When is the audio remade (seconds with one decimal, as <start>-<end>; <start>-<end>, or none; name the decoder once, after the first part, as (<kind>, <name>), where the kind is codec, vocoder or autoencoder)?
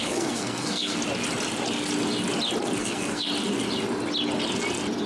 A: 0.0-1.0 (codec, SNAC); 2.8-3.3